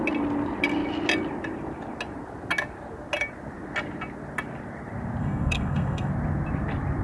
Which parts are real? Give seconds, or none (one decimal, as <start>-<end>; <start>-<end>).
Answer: 0.0-5.2; 6.1-7.0